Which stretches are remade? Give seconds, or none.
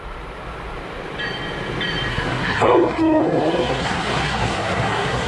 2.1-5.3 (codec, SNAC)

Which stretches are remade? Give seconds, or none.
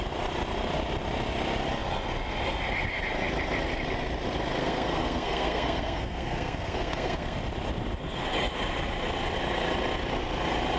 4.6-7.4 (codec, SNAC)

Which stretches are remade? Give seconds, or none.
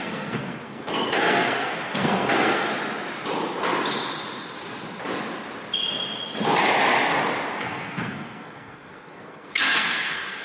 0.0-2.7 (codec, SNAC); 7.6-10.4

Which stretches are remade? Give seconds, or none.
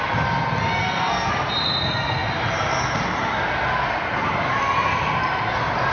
0.8-1.3 (codec, SNAC)